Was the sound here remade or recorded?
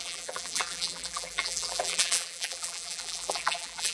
remade